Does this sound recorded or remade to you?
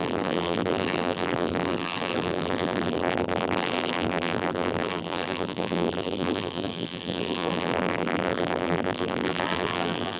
remade